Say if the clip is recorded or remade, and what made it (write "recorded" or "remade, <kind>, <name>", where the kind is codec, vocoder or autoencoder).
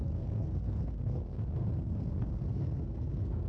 remade, codec, SNAC